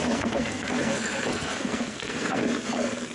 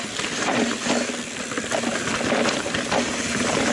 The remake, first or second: first